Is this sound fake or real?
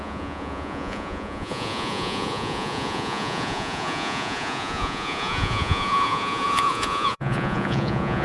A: fake